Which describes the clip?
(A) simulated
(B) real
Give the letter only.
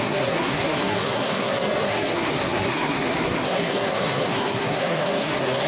A